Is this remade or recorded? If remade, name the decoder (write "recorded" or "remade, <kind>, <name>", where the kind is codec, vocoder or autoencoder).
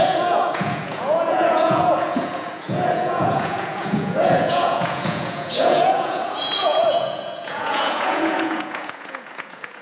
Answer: remade, vocoder, Vocos